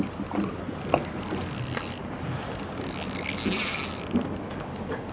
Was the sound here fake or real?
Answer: real